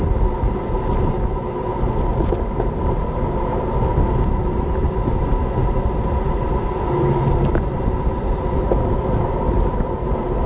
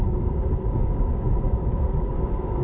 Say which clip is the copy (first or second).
second